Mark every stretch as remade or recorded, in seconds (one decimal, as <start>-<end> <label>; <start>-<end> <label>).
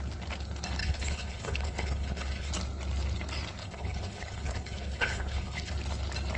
0.0-0.8 recorded; 0.8-2.5 remade; 2.5-3.6 recorded; 3.6-5.7 remade; 5.7-6.4 recorded